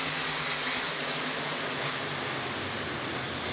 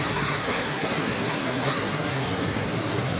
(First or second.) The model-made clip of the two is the second